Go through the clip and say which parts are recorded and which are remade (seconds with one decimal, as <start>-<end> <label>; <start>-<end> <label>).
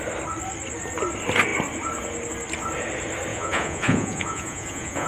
0.0-3.3 recorded; 3.3-5.1 remade